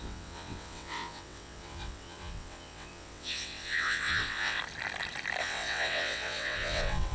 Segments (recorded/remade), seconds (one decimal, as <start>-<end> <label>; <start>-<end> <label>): 0.0-4.6 remade; 4.6-5.4 recorded; 5.4-7.1 remade